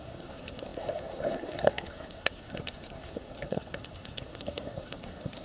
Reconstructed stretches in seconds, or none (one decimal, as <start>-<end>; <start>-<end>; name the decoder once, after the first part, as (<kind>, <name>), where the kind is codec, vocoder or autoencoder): 0.0-5.4 (codec, SNAC)